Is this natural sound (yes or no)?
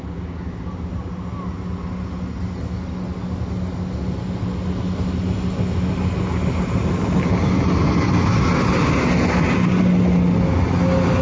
yes